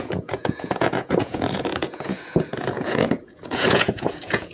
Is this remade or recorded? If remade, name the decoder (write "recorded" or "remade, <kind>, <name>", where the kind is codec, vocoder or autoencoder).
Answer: remade, vocoder, Vocos